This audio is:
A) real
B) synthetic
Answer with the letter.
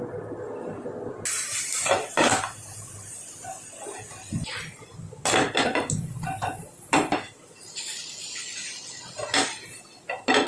A